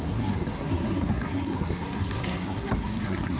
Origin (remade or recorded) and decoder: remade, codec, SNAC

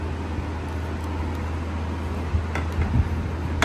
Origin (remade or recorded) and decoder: recorded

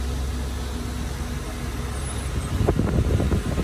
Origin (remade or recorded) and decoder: recorded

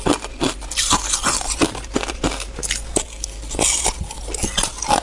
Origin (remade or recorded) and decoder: recorded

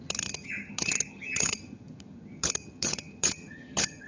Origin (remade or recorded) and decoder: remade, vocoder, HiFi-GAN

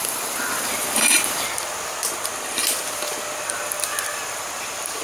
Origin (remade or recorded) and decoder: remade, vocoder, BigVGAN v2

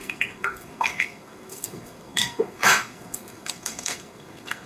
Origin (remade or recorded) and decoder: remade, codec, SNAC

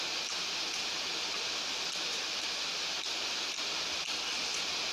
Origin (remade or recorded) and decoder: recorded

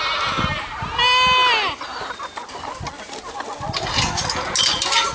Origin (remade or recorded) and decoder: recorded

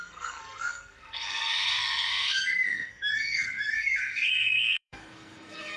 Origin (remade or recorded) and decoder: remade, codec, SNAC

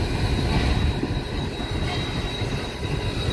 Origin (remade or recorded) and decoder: recorded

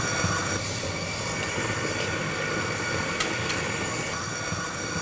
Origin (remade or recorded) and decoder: recorded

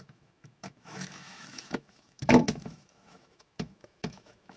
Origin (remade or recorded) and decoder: remade, autoencoder, DAC-VAE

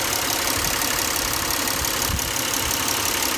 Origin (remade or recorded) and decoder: recorded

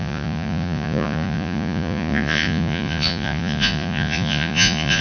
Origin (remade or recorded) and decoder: remade, vocoder, Vocos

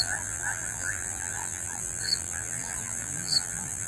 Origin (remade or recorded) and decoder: remade, vocoder, BigVGAN v2